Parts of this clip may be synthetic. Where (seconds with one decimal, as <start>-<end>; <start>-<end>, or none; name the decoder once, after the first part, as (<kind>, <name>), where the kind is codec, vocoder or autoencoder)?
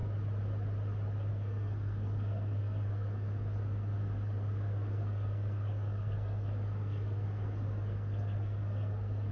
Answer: 1.3-9.3 (codec, SNAC)